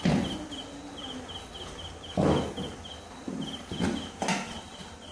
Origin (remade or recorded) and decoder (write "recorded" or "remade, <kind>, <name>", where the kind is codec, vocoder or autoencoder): recorded